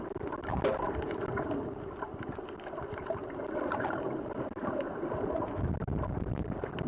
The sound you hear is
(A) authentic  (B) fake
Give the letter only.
A